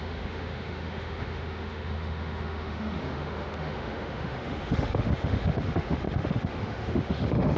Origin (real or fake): fake